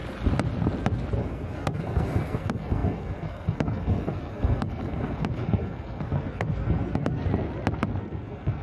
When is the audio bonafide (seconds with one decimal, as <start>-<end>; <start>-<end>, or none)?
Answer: 0.0-1.2; 7.2-8.0